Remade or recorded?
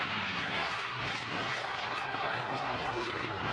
remade